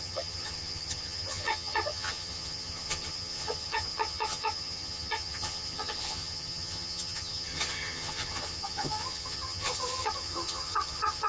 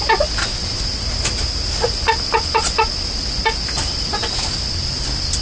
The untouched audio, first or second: second